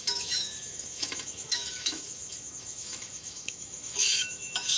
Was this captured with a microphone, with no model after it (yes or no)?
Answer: no